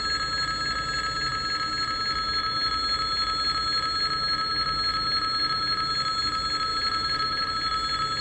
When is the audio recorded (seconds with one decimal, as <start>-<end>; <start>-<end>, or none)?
0.0-6.7; 7.5-8.2